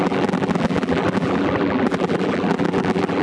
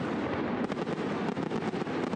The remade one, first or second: first